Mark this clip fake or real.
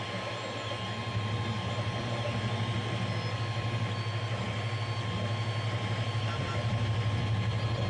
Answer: real